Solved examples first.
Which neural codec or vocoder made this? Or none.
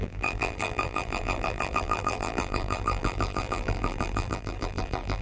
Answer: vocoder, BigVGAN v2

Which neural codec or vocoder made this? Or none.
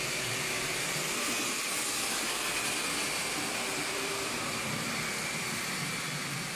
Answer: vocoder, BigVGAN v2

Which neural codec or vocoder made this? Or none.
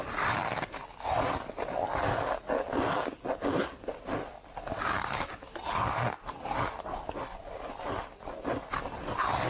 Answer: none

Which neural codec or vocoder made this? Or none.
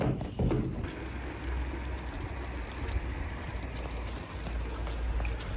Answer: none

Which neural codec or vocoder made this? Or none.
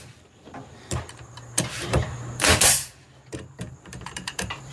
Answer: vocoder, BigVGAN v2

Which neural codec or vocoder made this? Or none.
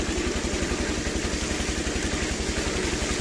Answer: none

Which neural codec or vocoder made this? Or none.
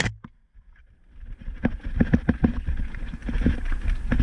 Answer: none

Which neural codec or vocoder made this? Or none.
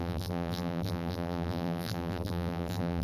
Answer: vocoder, BigVGAN v2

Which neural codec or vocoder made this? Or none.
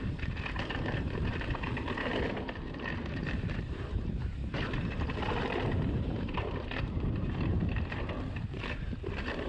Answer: vocoder, BigVGAN v2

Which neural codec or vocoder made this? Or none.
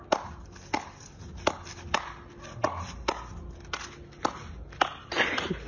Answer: none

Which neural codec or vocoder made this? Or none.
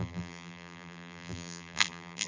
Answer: vocoder, BigVGAN v2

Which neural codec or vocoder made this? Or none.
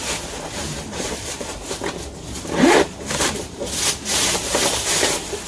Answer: vocoder, BigVGAN v2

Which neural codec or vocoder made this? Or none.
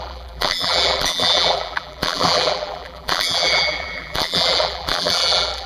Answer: vocoder, BigVGAN v2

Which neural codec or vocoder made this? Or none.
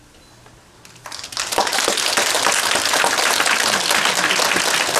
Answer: none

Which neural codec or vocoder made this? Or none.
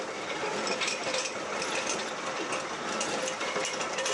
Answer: vocoder, BigVGAN v2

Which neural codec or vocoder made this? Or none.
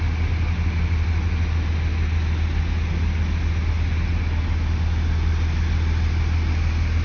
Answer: none